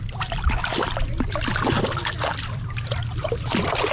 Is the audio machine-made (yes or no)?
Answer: yes